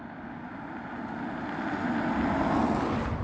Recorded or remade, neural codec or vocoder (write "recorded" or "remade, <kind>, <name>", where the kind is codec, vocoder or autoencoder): recorded